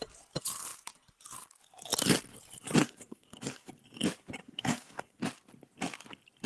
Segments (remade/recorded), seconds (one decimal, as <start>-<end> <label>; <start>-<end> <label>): 0.0-2.8 recorded; 2.8-3.7 remade; 3.7-4.4 recorded; 4.4-5.2 remade; 5.2-6.5 recorded